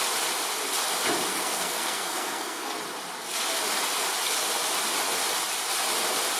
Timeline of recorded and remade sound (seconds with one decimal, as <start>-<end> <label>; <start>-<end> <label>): 0.0-1.3 recorded; 1.3-2.8 remade; 2.8-6.4 recorded